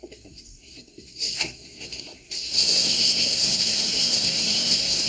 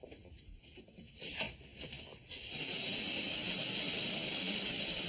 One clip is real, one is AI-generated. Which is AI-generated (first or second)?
first